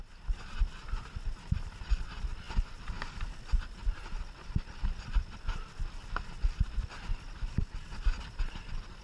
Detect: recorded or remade recorded